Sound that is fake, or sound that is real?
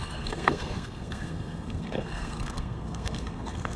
fake